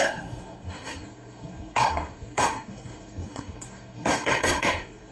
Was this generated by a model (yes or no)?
yes